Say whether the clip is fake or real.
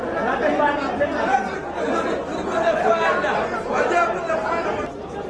real